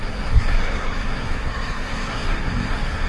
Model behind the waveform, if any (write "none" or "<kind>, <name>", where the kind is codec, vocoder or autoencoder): codec, SNAC